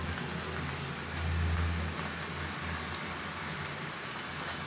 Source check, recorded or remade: recorded